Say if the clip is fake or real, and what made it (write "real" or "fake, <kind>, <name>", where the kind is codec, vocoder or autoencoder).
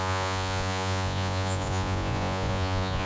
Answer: fake, vocoder, Vocos